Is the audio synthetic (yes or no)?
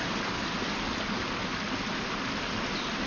no